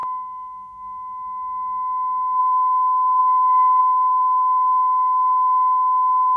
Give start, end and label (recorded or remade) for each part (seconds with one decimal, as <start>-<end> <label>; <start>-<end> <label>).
0.0-2.4 recorded; 2.4-6.4 remade